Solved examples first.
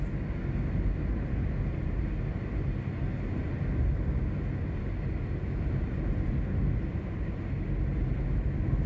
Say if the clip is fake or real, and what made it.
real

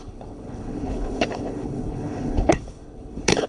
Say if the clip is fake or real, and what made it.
fake, codec, HILCodec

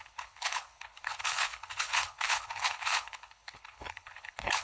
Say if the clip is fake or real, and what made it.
fake, codec, HILCodec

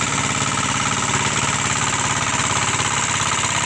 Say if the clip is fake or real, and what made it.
real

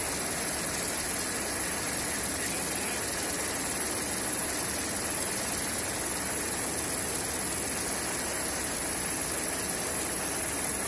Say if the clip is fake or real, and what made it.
real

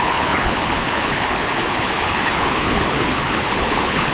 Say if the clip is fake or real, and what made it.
fake, codec, HILCodec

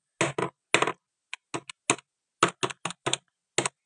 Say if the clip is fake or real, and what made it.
real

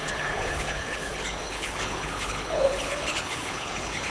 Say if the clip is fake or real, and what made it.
fake, codec, HILCodec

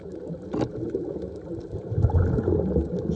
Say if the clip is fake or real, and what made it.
real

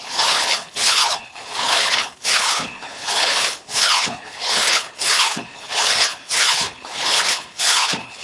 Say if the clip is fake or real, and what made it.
fake, codec, HILCodec